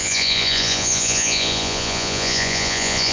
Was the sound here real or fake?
fake